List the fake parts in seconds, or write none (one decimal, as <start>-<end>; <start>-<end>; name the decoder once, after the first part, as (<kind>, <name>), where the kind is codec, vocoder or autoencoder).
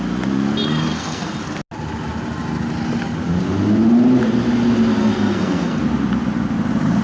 0.9-1.4 (codec, SNAC); 5.0-5.8